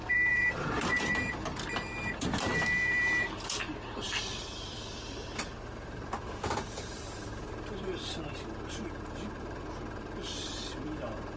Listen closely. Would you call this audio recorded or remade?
remade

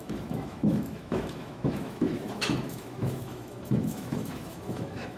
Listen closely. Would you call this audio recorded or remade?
remade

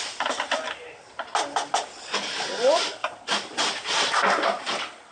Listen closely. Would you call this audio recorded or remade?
remade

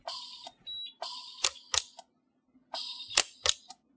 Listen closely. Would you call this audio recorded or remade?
recorded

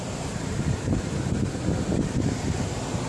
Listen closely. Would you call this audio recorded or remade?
remade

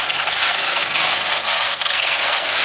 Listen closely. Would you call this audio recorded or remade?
remade